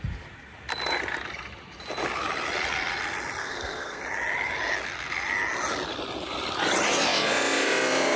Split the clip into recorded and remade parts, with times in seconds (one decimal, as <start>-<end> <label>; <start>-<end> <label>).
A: 0.0-3.4 recorded; 3.4-4.0 remade; 4.0-8.2 recorded

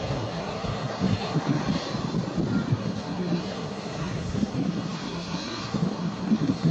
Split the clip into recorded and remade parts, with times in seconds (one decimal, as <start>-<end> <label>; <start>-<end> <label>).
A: 0.0-1.6 remade; 1.6-2.7 recorded; 2.7-6.7 remade

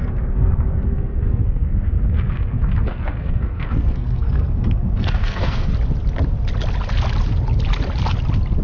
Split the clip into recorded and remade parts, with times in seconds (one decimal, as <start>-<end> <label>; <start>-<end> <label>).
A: 0.0-5.7 remade; 5.7-8.6 recorded

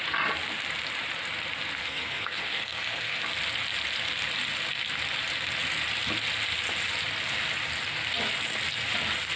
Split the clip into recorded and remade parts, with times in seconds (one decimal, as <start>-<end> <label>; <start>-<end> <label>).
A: 0.0-1.8 recorded; 1.8-3.2 remade; 3.2-9.4 recorded

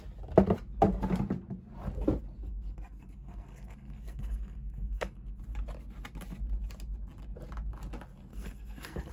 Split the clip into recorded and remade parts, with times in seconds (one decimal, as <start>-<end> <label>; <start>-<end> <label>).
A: 0.0-2.4 recorded; 2.4-5.4 remade; 5.4-8.3 recorded; 8.3-9.1 remade